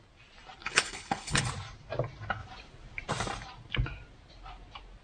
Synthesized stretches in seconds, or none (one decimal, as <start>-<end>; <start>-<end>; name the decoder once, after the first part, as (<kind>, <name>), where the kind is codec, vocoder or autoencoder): 0.6-1.4 (codec, HILCodec)